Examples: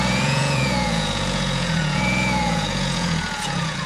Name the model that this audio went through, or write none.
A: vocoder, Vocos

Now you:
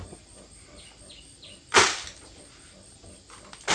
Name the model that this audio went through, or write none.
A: none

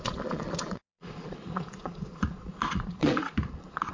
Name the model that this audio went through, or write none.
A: vocoder, Vocos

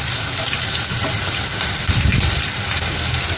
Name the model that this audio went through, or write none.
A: none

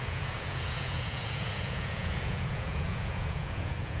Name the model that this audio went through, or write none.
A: vocoder, Vocos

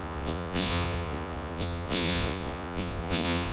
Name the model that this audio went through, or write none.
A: vocoder, Vocos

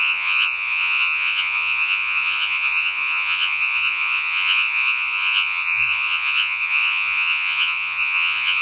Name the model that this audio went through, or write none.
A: vocoder, Vocos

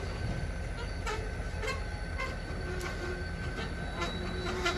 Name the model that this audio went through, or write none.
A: none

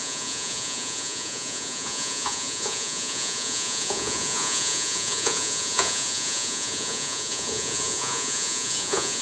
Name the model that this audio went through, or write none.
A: vocoder, Vocos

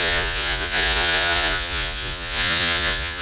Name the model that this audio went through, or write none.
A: vocoder, Vocos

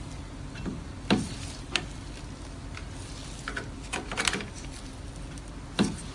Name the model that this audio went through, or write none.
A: none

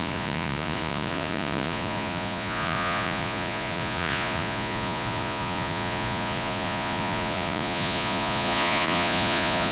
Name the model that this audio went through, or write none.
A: vocoder, Vocos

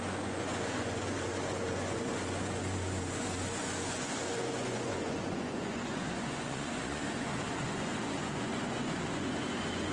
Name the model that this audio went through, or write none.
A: vocoder, Vocos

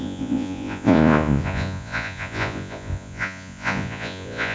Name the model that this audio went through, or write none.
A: vocoder, Vocos